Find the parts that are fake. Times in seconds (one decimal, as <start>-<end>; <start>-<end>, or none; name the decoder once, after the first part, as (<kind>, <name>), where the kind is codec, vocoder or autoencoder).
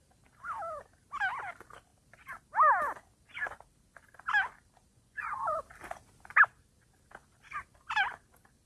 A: 4.9-5.6 (vocoder, Vocos)